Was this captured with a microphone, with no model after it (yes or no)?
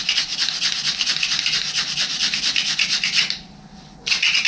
yes